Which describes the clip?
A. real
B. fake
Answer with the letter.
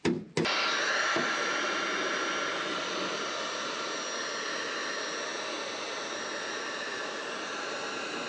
A